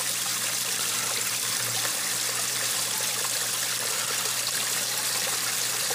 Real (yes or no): yes